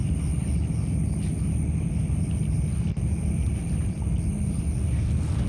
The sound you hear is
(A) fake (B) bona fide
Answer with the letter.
A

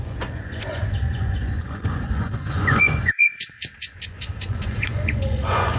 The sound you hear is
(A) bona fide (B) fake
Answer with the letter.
B